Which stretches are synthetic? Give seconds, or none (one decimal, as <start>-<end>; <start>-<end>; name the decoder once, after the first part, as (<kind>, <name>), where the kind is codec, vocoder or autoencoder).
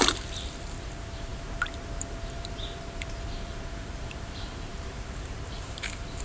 0.0-6.2 (vocoder, BigVGAN v2)